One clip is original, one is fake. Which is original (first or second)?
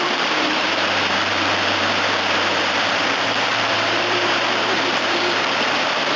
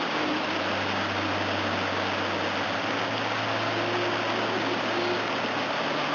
second